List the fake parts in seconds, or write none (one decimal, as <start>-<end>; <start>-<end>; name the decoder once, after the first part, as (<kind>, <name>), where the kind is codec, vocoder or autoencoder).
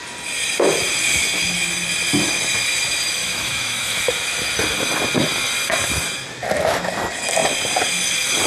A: 3.2-4.1 (autoencoder, DAC-VAE)